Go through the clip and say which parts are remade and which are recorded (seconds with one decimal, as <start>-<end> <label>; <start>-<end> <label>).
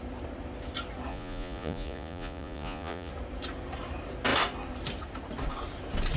0.0-1.1 recorded; 1.1-3.1 remade; 3.1-6.2 recorded